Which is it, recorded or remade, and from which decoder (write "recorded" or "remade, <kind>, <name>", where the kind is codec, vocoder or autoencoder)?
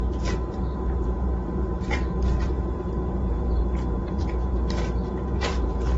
remade, vocoder, BigVGAN v2